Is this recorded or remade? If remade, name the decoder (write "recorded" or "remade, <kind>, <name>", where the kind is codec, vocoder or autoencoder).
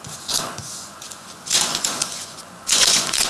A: remade, vocoder, Vocos